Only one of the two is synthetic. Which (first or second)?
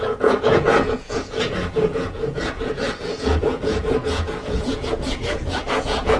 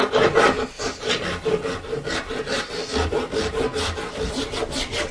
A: first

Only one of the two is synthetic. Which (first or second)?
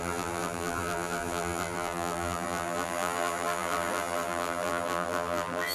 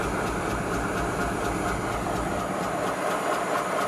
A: first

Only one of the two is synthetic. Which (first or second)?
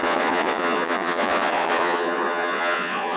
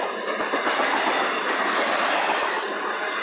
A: first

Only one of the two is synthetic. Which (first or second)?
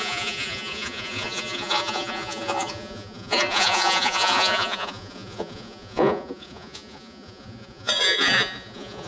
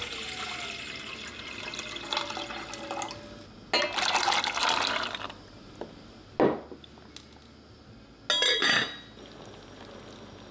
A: first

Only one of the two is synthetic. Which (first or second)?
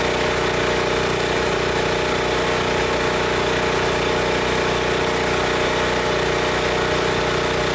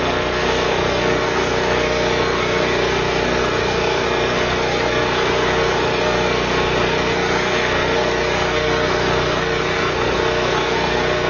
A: second